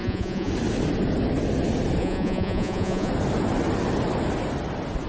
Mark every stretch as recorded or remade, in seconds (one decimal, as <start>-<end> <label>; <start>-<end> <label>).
0.0-0.5 remade; 0.5-2.0 recorded; 2.0-3.1 remade; 3.1-5.1 recorded